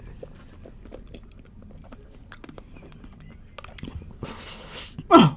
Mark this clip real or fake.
real